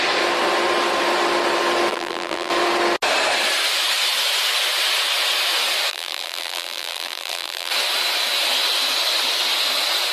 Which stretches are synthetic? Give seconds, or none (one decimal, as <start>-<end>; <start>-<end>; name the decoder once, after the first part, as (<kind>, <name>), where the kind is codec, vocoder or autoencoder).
1.9-2.5 (vocoder, BigVGAN v2); 5.9-7.7